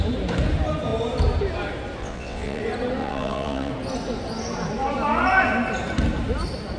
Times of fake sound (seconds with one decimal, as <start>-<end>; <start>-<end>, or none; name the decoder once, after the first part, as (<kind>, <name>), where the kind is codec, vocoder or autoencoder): 2.0-2.6 (vocoder, WaveNeXt); 3.0-3.7